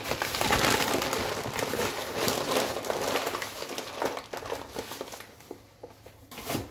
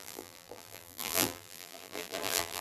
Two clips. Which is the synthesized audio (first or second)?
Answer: second